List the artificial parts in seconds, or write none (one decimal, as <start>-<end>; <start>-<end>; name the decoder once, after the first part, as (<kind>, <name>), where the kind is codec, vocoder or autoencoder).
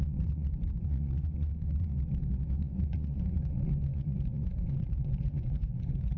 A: 0.0-1.9 (vocoder, Vocos); 2.6-6.2